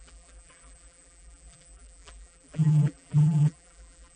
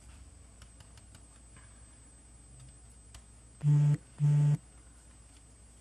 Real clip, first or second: second